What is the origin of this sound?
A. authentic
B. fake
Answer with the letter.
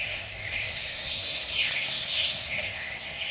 B